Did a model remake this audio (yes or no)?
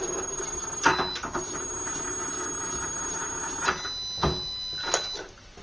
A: no